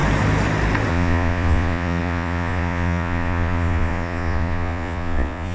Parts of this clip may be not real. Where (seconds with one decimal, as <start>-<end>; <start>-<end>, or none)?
0.9-5.5